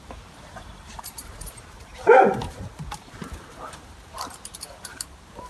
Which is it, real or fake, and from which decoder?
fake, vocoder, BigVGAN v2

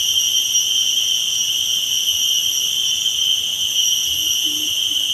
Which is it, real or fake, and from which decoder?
real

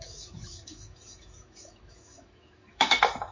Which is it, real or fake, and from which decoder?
fake, autoencoder, DAC-VAE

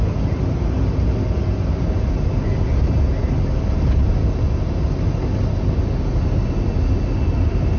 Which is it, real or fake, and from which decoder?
real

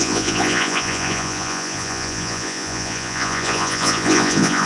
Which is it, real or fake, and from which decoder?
fake, vocoder, Vocos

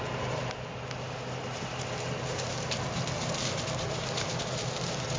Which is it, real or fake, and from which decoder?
real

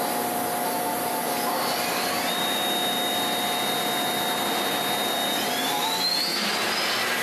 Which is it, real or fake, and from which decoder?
real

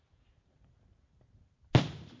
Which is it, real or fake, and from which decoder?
real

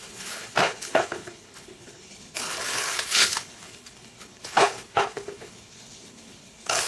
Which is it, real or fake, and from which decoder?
fake, codec, HILCodec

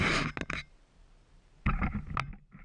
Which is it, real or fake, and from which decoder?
real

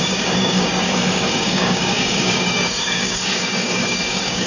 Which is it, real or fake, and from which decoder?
fake, codec, DAC